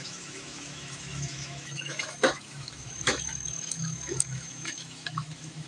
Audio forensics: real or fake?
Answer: fake